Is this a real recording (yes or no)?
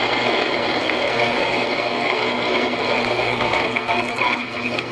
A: no